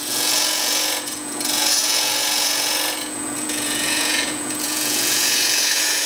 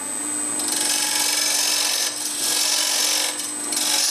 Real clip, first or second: second